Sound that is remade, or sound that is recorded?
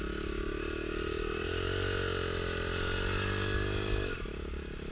recorded